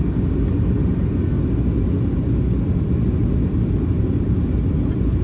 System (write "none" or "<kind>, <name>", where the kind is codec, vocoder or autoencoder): none